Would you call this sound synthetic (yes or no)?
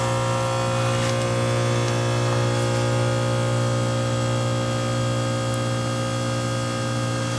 no